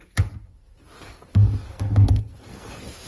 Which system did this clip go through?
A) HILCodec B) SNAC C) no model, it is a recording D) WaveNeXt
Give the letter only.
B